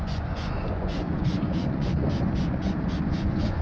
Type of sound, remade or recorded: remade